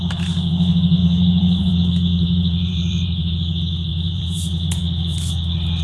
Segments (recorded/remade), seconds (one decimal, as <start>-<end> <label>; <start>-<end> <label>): 0.0-1.0 recorded; 1.0-1.7 remade; 1.7-2.1 recorded; 2.1-3.3 remade; 3.3-3.9 recorded; 3.9-4.8 remade; 4.8-5.8 recorded